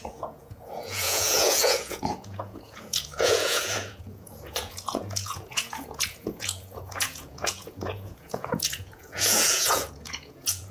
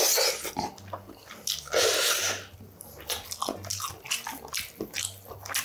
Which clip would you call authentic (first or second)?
second